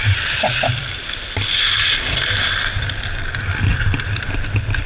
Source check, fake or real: fake